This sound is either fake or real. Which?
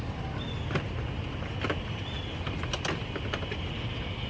real